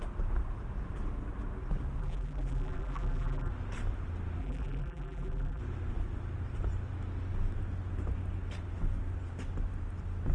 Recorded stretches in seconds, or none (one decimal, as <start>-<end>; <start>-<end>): 0.0-2.0; 3.5-4.4; 5.6-10.3